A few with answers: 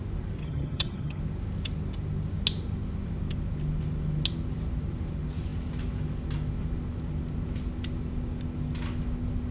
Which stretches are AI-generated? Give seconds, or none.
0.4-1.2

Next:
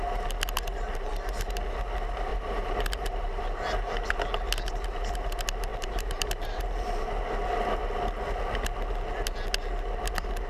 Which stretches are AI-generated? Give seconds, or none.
2.3-3.4; 5.7-7.1

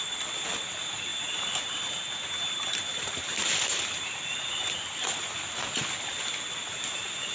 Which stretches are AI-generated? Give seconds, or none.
none

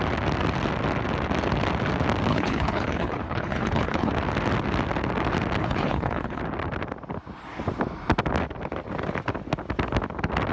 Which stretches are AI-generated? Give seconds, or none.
2.3-4.1; 5.6-6.4

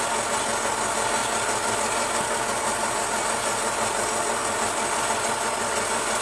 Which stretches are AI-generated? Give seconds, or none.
none

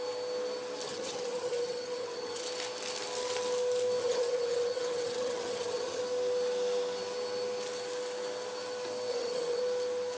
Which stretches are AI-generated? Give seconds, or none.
0.9-2.4; 4.0-6.0; 9.1-9.6

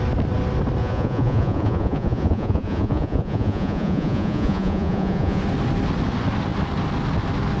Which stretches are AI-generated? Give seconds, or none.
0.8-5.4

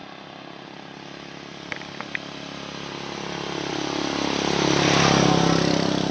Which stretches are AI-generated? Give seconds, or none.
none